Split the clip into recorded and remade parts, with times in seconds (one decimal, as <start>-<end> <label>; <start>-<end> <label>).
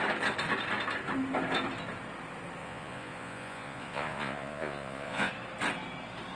0.0-2.6 recorded; 2.6-5.3 remade; 5.3-6.4 recorded